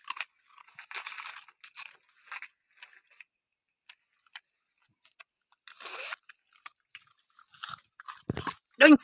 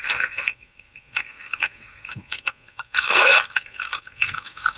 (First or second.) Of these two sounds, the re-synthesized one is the second